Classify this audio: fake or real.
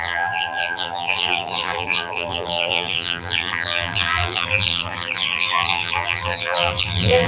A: fake